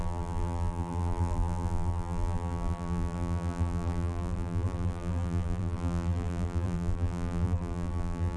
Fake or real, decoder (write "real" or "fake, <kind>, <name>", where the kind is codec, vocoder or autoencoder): fake, vocoder, BigVGAN v2